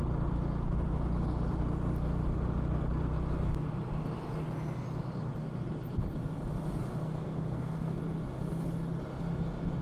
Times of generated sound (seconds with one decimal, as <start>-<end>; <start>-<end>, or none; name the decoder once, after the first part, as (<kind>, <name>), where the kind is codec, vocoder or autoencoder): 7.0-8.0 (codec, SNAC)